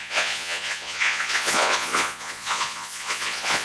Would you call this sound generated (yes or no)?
yes